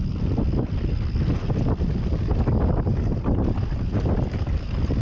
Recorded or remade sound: recorded